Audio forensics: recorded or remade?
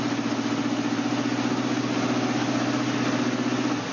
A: recorded